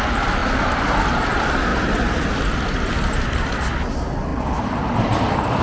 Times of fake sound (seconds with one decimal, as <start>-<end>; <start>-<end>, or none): none